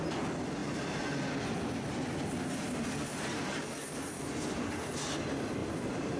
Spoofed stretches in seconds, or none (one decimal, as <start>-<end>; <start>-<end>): 0.6-1.3; 3.1-3.7; 5.6-6.2